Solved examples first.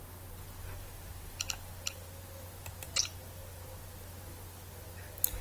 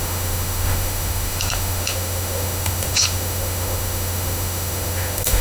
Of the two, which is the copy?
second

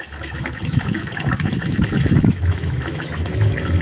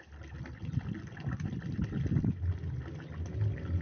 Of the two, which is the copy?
first